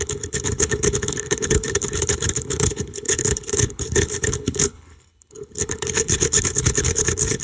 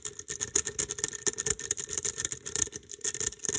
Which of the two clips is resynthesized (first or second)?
first